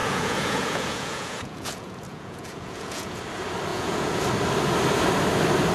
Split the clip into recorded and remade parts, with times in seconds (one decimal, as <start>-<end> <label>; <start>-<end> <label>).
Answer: 0.0-3.2 remade; 3.2-3.7 recorded; 3.7-4.2 remade; 4.2-5.7 recorded